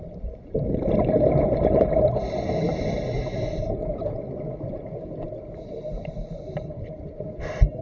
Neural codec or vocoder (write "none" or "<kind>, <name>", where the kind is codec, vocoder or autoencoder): vocoder, BigVGAN v2